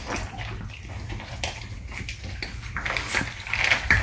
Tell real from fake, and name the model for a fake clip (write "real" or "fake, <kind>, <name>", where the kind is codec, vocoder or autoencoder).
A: real